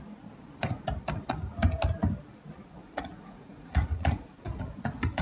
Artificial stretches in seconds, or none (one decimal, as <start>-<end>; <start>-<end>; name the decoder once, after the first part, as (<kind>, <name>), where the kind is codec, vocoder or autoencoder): 2.8-5.2 (vocoder, Vocos)